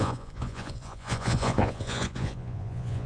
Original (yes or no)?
no